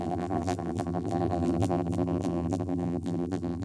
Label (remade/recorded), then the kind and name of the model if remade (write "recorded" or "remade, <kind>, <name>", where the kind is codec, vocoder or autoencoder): remade, vocoder, BigVGAN v2